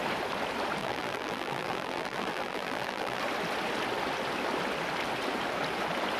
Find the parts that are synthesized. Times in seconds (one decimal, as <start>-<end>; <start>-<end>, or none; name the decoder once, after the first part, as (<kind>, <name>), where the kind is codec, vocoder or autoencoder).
0.8-3.2 (vocoder, BigVGAN v2)